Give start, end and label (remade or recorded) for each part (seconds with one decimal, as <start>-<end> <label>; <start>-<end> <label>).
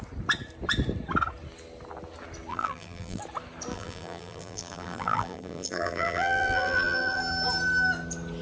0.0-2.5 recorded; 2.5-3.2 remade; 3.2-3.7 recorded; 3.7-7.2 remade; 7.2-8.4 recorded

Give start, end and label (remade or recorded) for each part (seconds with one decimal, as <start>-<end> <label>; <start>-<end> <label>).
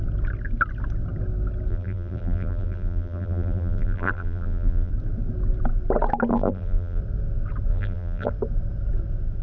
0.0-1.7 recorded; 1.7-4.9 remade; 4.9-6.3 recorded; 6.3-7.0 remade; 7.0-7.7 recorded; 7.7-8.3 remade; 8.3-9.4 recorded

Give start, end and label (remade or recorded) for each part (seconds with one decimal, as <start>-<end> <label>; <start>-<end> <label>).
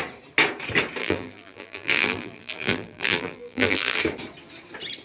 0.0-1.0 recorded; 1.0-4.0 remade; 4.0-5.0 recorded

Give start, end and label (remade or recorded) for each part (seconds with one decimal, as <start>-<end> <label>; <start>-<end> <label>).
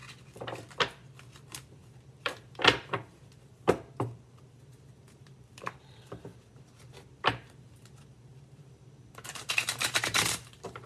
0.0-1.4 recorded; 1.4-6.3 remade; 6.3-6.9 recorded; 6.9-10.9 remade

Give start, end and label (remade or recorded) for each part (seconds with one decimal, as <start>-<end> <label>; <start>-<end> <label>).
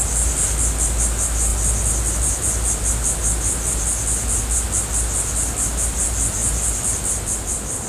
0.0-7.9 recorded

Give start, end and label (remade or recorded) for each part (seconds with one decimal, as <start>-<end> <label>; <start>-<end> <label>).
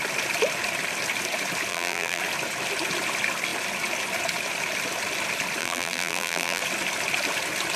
0.0-1.7 recorded; 1.7-2.2 remade; 2.2-5.6 recorded; 5.6-6.6 remade; 6.6-7.8 recorded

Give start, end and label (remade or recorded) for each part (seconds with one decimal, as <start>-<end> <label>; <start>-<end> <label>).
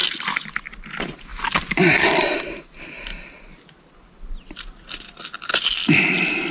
0.0-6.5 recorded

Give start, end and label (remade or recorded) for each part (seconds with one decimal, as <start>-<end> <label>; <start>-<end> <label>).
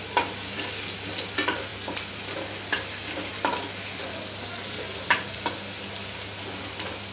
0.0-7.1 recorded